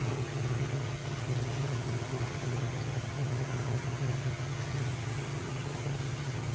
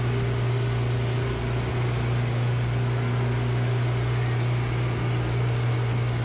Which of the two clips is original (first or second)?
second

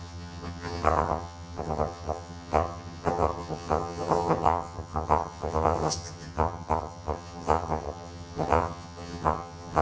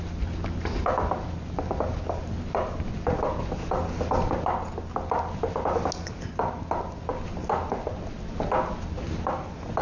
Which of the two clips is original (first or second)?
second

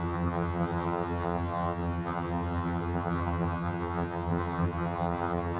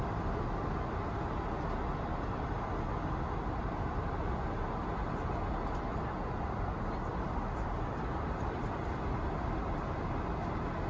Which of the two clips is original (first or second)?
second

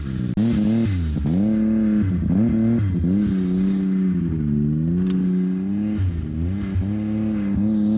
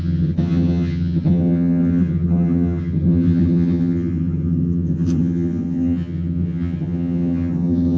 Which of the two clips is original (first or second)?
first